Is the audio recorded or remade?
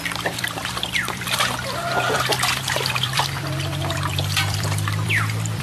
remade